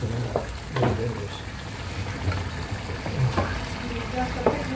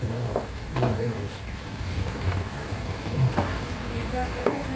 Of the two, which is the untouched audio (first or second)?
first